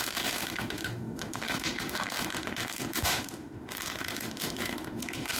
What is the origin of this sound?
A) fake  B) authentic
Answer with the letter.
A